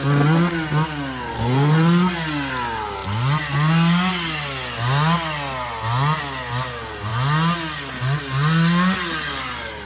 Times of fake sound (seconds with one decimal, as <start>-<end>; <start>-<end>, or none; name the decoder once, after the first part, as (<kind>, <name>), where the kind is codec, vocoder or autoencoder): 1.3-2.1 (codec, SNAC)